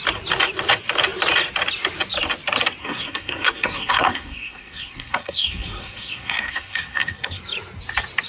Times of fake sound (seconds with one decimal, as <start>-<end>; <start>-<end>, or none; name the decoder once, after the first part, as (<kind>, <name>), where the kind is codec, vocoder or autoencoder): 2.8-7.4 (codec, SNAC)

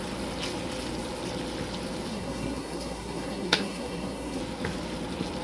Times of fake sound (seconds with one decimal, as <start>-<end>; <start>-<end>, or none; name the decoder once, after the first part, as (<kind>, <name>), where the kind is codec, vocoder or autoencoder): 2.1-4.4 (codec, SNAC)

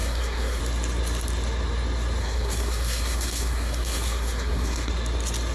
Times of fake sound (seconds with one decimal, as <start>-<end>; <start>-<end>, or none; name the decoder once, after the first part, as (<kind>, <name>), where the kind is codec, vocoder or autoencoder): 0.0-0.6 (codec, SNAC); 2.2-4.9

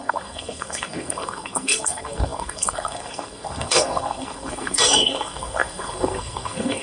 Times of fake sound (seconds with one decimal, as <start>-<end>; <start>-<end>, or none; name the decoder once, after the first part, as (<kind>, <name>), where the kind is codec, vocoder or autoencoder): 0.0-6.8 (codec, SNAC)